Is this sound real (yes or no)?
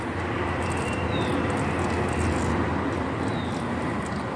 yes